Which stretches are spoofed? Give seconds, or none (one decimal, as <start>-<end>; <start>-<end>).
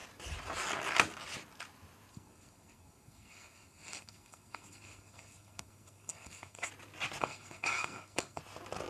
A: 2.1-6.7; 7.2-8.4